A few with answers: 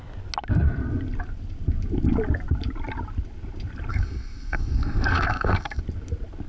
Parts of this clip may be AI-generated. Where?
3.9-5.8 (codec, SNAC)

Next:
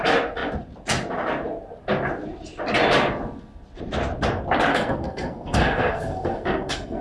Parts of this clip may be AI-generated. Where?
4.7-7.0 (codec, SNAC)

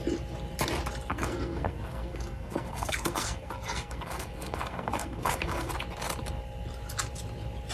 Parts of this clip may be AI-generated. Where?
1.1-5.7 (codec, SNAC)

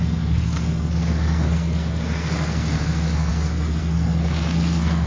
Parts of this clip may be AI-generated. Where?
0.0-5.1 (codec, SNAC)